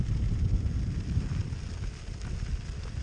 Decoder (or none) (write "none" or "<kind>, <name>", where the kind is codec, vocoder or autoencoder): none